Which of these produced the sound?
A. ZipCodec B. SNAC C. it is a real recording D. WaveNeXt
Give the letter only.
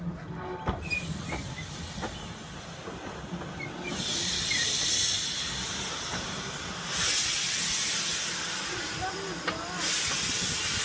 C